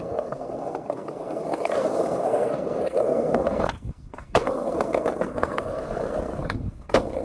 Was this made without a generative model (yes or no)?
no